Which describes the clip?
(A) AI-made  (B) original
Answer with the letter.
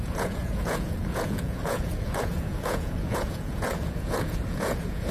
A